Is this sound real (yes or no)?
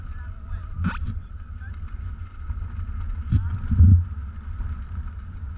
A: yes